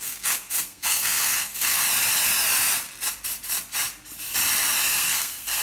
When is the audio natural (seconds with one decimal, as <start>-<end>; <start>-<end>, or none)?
1.8-4.9